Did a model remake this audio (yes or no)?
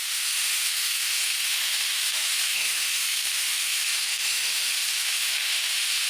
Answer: yes